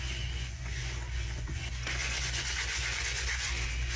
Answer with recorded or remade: remade